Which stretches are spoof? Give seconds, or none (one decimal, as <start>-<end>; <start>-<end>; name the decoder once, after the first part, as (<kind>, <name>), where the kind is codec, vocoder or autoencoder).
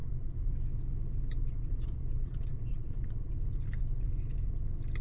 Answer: 0.0-0.5 (vocoder, Vocos); 1.4-3.3